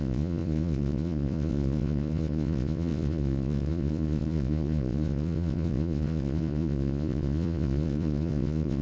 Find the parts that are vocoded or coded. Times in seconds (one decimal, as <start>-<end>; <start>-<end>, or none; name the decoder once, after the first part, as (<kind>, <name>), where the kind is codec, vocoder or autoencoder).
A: 0.0-8.8 (vocoder, Vocos)